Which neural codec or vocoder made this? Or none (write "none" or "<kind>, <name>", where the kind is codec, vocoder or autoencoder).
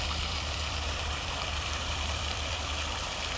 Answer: vocoder, BigVGAN v2